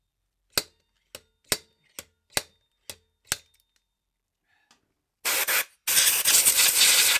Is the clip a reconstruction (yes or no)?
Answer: no